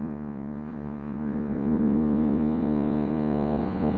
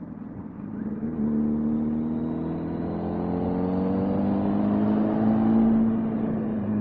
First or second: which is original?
second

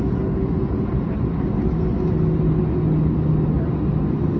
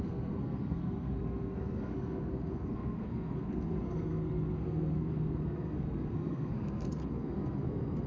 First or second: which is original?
first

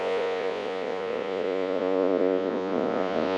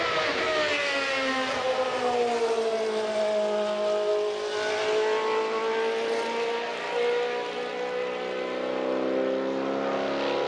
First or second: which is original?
second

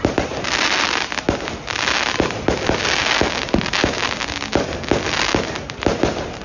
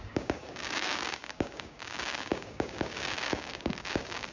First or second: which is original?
first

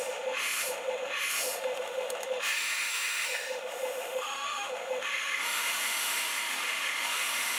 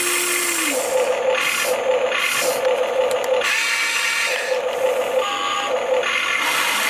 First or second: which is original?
second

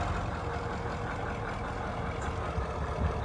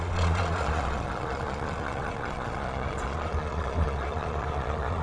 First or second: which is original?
first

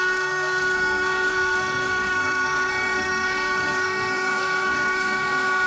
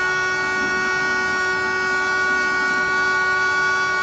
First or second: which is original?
second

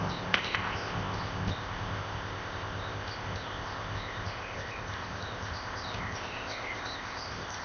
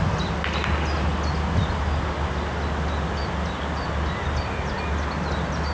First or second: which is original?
second